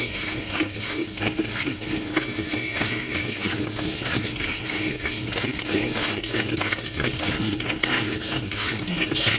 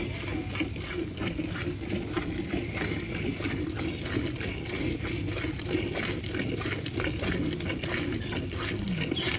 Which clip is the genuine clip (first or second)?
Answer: second